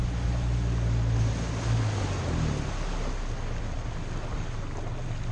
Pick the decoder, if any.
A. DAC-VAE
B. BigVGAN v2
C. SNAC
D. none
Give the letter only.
D